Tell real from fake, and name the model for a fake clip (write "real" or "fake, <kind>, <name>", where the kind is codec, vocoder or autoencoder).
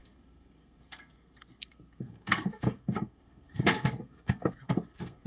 fake, codec, SNAC